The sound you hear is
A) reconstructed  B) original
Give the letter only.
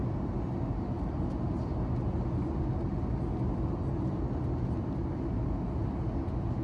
B